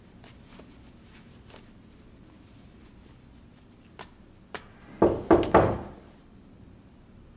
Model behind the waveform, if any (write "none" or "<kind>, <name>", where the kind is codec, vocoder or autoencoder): none